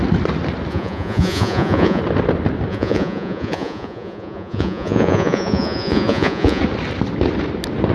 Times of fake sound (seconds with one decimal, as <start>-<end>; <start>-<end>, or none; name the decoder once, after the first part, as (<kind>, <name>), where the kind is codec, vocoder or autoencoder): 0.7-2.0 (vocoder, Vocos); 2.7-6.6